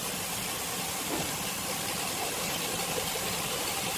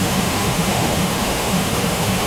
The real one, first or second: first